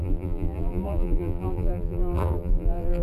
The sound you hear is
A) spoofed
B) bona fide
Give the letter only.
A